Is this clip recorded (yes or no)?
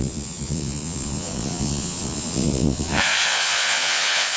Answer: no